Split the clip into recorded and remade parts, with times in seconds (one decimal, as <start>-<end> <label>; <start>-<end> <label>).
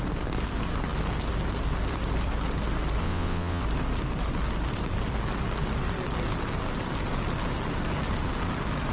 0.0-3.0 recorded; 3.0-3.6 remade; 3.6-8.9 recorded